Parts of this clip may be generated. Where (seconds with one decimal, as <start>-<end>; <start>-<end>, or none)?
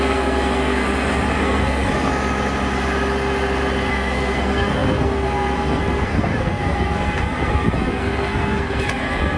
0.0-0.8; 1.4-2.1; 3.9-9.4